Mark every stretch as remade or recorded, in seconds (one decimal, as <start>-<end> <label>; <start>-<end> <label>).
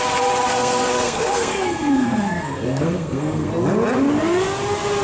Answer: 0.0-0.5 recorded; 0.5-3.5 remade; 3.5-5.0 recorded